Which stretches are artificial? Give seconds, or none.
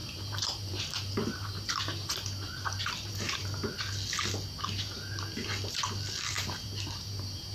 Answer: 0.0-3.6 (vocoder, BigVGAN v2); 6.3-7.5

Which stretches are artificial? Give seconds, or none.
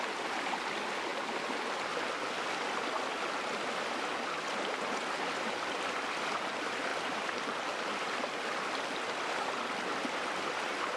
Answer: none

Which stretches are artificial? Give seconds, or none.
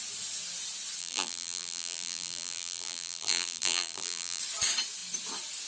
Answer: 1.0-4.4 (vocoder, BigVGAN v2)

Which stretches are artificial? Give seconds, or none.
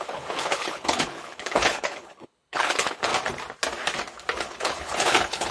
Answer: 0.0-3.1 (codec, HILCodec); 4.4-5.5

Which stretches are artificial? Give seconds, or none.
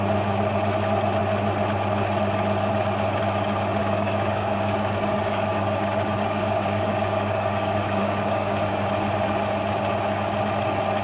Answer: 3.8-8.9 (codec, DAC)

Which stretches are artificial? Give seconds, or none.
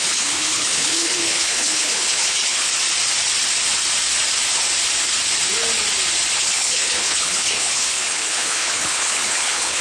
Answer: 0.0-2.7 (codec, HILCodec); 6.4-9.8